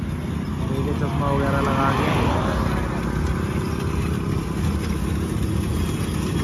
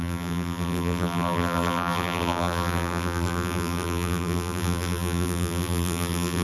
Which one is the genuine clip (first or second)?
first